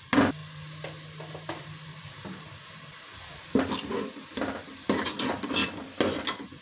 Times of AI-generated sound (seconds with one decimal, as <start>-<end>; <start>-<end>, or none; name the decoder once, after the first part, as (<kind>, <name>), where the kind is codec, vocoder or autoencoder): none